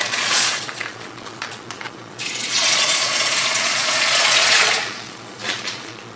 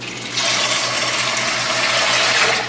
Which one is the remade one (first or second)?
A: first